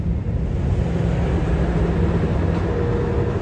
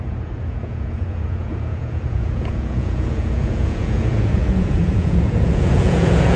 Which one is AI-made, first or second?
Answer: second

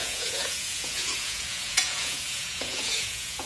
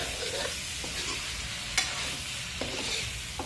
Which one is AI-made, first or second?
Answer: first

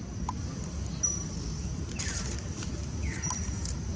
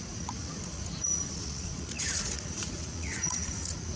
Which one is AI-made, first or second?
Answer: second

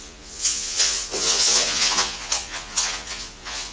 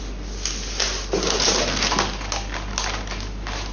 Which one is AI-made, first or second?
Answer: first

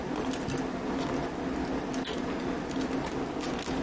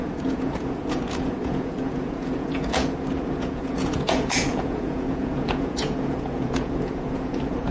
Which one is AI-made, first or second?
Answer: second